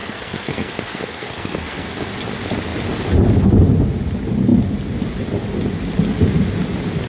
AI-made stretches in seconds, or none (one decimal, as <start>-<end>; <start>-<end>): 0.0-2.1

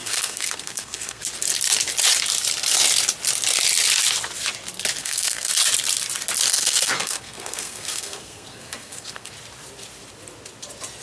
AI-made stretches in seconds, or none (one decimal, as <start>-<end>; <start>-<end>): 0.0-1.2; 5.0-5.5; 6.5-9.3

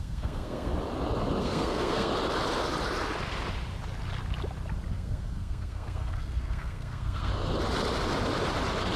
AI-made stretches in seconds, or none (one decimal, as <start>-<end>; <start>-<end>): 0.0-0.7; 1.4-2.1; 4.9-7.3

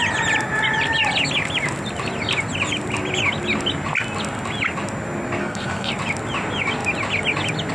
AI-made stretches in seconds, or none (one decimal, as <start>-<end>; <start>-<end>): 5.4-5.9

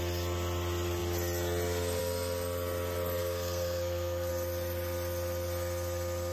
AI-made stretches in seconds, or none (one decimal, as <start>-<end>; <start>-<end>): 3.2-4.3

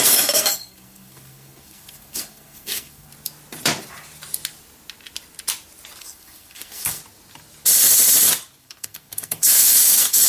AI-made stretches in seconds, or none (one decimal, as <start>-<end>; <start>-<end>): 0.0-3.1; 6.0-7.0; 8.6-10.3